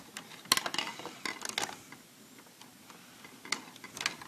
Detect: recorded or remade recorded